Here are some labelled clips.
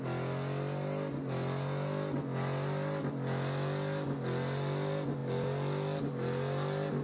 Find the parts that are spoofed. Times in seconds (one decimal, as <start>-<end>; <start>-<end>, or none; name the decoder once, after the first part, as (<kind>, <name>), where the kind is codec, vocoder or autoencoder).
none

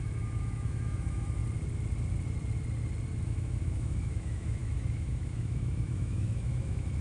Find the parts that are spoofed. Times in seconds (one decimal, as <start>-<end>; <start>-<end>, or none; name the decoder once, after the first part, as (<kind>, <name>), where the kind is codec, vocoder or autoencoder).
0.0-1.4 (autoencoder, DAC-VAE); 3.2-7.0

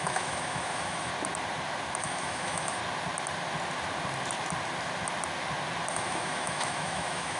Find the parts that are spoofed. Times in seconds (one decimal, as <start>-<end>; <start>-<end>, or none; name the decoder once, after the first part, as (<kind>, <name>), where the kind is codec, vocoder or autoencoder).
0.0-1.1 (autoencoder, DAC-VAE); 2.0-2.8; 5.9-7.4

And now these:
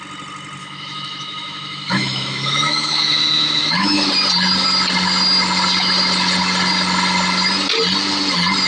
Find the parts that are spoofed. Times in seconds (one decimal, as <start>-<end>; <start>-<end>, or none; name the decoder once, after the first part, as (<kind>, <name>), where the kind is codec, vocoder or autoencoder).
0.6-4.1 (autoencoder, DAC-VAE)